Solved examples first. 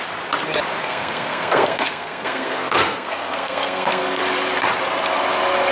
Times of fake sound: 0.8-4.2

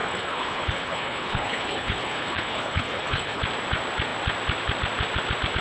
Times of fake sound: 0.0-3.4

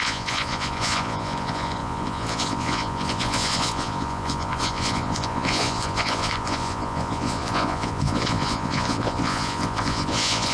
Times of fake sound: 0.0-10.5

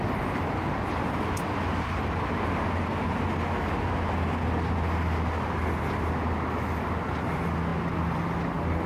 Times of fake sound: none

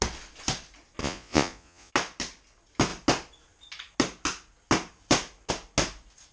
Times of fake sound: 1.0-1.9

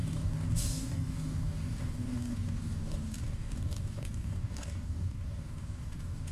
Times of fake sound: 0.0-6.3